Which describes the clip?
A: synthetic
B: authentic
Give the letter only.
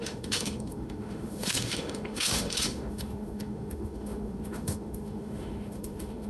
A